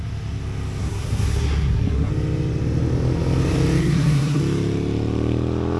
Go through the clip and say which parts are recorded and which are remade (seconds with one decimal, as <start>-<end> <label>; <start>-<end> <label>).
0.0-0.8 recorded; 0.8-2.1 remade; 2.1-3.8 recorded; 3.8-4.4 remade; 4.4-5.8 recorded